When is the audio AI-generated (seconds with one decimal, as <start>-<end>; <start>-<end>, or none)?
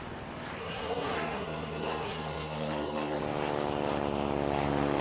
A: 0.6-3.2